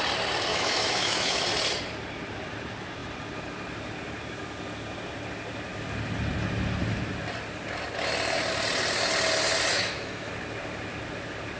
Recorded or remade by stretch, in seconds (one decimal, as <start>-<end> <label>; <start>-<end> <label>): 0.0-0.5 recorded; 0.5-1.4 remade; 1.4-9.7 recorded; 9.7-10.3 remade; 10.3-11.6 recorded